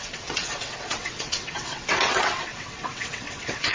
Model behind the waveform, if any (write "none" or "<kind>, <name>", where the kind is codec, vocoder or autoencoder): vocoder, WaveNeXt